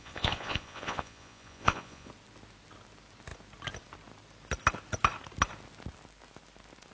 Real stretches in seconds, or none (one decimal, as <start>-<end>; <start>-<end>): 2.1-6.9